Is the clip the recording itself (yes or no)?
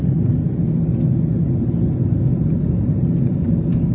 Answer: yes